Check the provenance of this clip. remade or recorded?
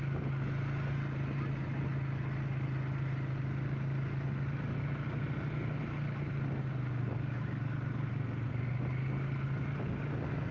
recorded